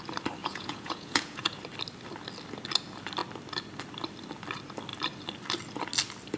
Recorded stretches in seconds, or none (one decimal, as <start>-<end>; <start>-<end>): 0.0-0.4; 1.6-6.4

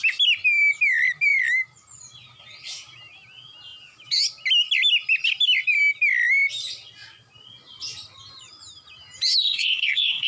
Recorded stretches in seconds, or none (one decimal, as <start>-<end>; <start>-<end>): 0.0-9.4

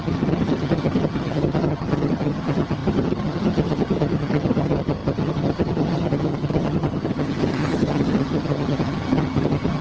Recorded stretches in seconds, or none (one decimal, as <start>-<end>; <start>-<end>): none

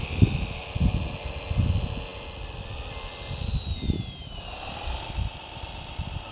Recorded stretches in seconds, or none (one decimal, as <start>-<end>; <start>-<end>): 0.0-4.2; 5.6-6.3

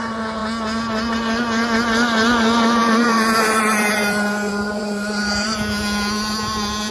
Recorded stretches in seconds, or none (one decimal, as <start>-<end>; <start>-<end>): 0.0-2.8; 5.6-6.9

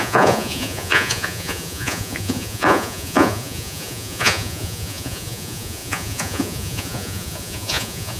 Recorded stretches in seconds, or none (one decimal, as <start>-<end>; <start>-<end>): none

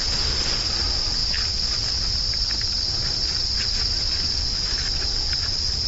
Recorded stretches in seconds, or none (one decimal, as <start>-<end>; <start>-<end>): 0.0-5.9

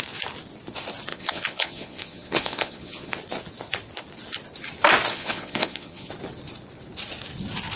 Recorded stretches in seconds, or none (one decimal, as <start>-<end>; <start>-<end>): 0.0-1.1; 3.1-5.1; 6.1-7.8